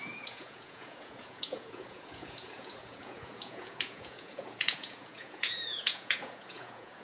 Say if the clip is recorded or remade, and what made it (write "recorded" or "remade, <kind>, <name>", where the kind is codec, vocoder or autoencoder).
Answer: remade, vocoder, Vocos